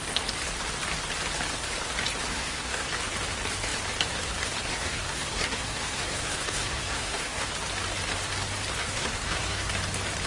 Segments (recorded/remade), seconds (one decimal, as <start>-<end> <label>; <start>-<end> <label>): 0.0-2.3 recorded; 2.3-2.9 remade; 2.9-4.7 recorded; 4.7-7.5 remade; 7.5-8.8 recorded; 8.8-9.7 remade; 9.7-10.3 recorded